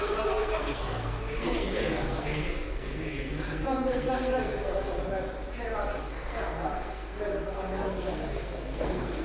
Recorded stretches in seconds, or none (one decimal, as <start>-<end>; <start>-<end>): 5.0-6.0